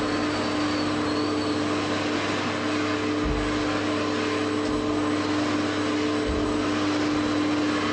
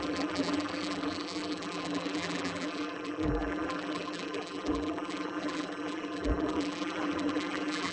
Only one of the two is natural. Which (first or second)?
first